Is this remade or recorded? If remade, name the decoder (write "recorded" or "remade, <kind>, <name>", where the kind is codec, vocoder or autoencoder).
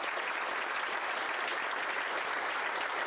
recorded